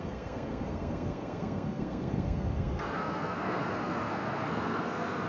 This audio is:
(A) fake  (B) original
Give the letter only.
A